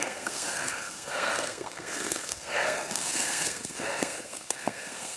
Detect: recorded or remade remade